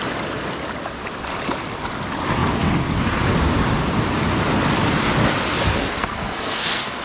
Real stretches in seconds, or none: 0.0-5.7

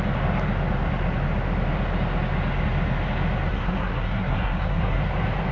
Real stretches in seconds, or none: 0.0-3.5; 5.1-5.5

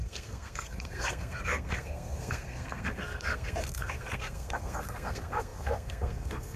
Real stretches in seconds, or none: none